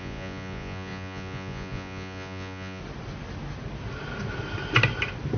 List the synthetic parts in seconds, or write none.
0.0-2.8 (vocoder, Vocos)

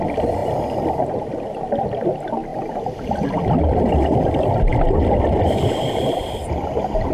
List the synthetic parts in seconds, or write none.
2.5-7.1 (vocoder, BigVGAN v2)

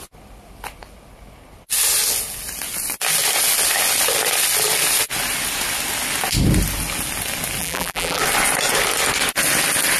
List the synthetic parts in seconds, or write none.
7.6-8.2 (vocoder, BigVGAN v2)

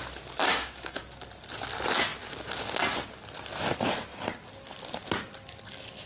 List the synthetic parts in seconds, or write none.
0.5-1.0 (autoencoder, DAC-VAE)

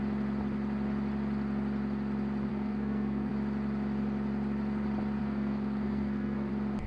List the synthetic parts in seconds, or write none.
2.5-3.3 (codec, SNAC); 5.2-6.5

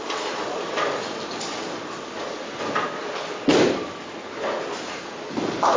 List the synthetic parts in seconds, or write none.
3.5-5.1 (vocoder, BigVGAN v2)

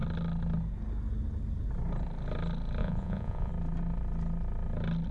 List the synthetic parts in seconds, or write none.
2.8-3.5 (vocoder, Vocos)